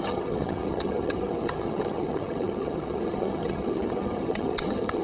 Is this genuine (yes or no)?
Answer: no